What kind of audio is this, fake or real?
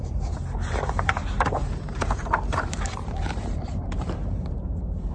fake